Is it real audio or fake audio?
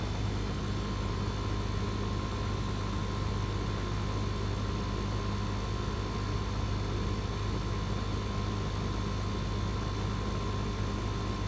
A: real